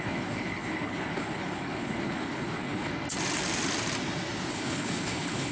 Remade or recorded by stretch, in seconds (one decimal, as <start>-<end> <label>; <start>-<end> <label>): 0.0-2.9 remade; 2.9-4.5 recorded; 4.5-5.5 remade